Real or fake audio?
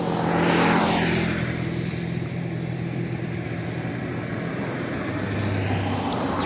real